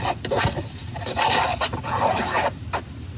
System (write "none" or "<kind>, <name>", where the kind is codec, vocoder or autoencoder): none